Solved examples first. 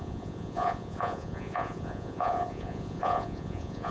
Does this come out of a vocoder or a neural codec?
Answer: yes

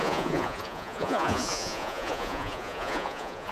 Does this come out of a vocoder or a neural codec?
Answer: yes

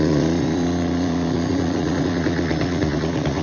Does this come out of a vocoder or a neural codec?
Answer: yes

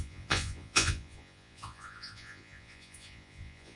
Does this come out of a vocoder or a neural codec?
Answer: yes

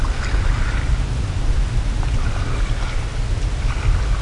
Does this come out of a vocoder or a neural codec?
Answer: no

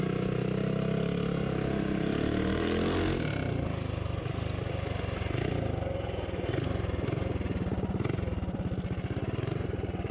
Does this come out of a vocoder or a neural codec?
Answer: no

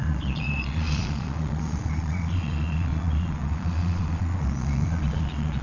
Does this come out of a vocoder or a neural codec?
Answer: yes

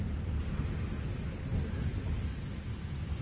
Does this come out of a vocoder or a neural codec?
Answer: no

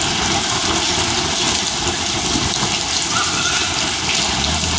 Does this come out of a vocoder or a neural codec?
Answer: no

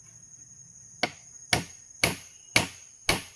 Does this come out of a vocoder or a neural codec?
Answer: no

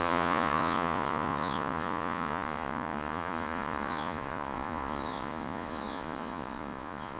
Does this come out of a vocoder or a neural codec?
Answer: yes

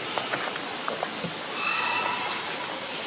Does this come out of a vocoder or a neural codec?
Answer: no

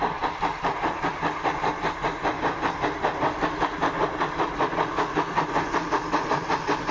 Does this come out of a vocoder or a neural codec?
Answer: no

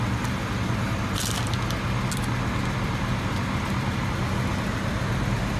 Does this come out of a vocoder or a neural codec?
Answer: no